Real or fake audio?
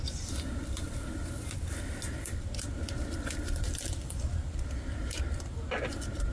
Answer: fake